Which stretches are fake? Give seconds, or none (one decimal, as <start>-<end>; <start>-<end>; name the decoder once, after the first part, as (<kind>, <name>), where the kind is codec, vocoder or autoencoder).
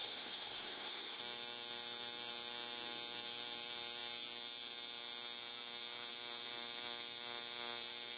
0.0-1.2 (codec, SNAC)